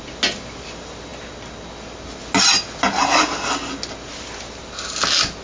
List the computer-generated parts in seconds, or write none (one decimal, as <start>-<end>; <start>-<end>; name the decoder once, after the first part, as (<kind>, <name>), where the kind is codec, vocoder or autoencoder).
none